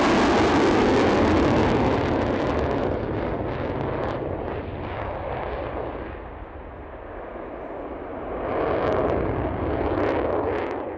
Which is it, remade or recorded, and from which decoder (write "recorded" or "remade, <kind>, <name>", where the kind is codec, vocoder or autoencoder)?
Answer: recorded